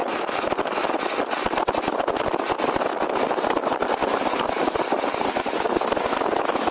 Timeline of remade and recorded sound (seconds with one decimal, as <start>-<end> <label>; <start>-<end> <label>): 0.0-6.7 recorded